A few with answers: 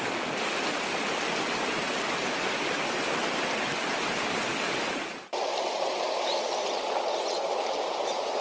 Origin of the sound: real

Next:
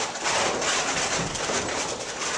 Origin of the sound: real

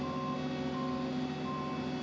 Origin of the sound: real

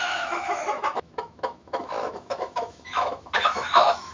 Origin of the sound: fake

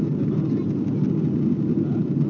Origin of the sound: real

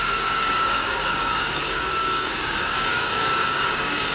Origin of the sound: fake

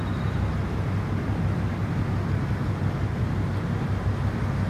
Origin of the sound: real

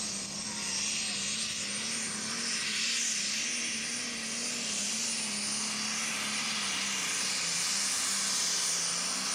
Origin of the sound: real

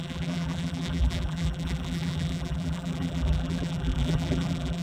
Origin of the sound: fake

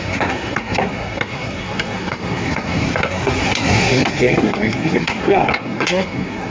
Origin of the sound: fake